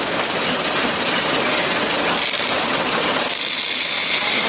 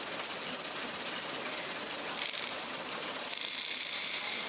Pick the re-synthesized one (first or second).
second